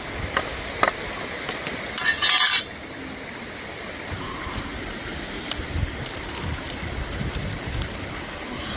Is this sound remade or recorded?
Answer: recorded